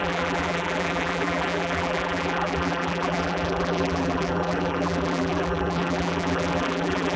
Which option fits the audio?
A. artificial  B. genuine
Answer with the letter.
A